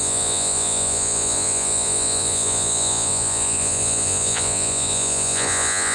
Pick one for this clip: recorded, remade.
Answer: remade